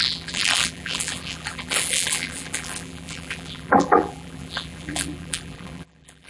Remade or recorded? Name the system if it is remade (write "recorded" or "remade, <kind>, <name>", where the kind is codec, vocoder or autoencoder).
remade, vocoder, BigVGAN v2